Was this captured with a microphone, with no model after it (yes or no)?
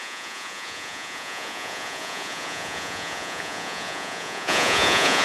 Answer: no